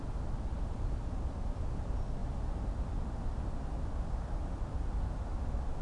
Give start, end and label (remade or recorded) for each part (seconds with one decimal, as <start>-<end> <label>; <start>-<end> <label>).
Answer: 0.0-5.8 recorded